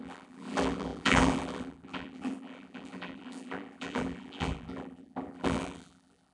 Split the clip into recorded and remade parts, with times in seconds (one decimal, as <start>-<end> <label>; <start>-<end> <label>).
0.0-6.3 remade